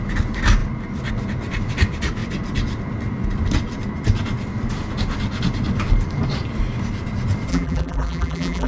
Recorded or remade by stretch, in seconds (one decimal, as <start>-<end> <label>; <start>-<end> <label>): 0.0-7.5 recorded; 7.5-8.7 remade